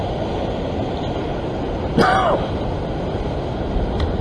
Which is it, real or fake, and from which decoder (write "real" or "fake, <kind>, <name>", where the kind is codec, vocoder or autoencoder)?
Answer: real